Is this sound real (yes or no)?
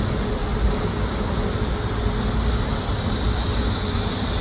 yes